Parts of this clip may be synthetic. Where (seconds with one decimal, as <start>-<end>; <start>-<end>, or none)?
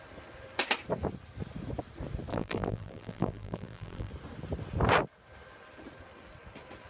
2.3-4.1